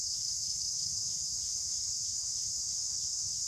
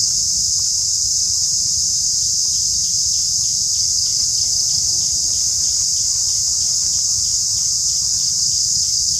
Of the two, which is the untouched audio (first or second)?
second